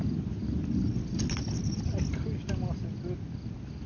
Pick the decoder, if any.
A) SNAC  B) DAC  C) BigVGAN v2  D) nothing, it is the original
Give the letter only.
D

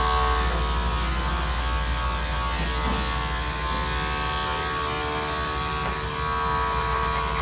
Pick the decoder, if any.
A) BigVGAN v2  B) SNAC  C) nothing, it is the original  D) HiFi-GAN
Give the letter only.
C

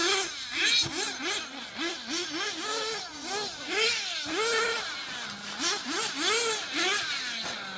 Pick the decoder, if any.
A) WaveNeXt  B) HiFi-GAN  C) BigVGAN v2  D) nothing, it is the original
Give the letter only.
D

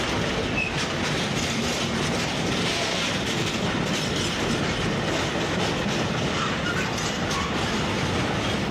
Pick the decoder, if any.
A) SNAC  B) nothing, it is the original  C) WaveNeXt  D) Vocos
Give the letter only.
B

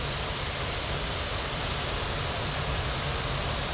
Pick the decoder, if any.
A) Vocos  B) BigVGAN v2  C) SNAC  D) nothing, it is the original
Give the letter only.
B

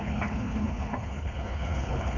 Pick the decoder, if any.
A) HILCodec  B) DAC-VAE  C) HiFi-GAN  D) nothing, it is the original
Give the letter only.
A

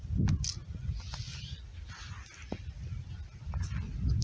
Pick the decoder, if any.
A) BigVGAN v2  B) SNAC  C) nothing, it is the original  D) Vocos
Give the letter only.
C